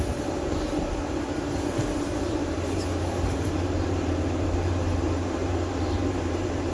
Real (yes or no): no